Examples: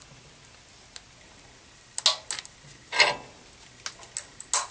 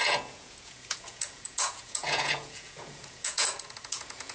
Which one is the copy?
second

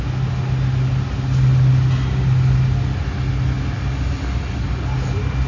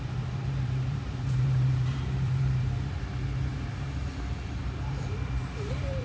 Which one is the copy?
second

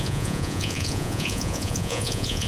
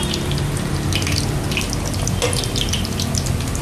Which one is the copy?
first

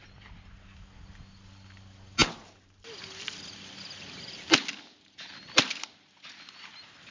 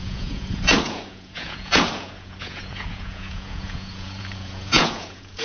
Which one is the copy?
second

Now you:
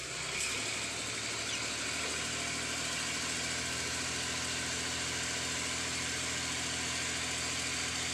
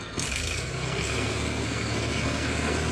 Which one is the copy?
second